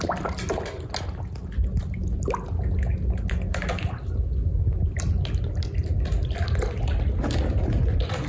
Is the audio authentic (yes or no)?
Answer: yes